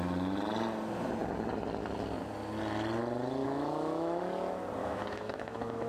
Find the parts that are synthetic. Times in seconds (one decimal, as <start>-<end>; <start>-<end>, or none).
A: 3.4-4.2; 4.8-5.9